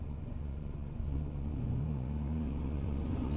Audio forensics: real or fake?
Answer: fake